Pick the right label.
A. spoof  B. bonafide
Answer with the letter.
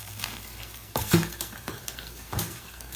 A